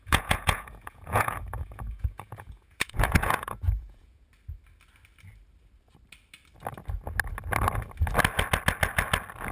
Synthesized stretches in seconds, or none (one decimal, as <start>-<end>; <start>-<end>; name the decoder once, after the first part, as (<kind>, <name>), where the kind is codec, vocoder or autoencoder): 0.0-4.3 (vocoder, Vocos)